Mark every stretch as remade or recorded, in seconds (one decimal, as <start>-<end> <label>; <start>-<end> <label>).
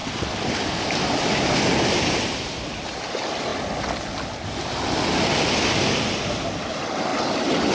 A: 0.0-3.5 remade; 3.5-6.3 recorded; 6.3-7.1 remade; 7.1-7.7 recorded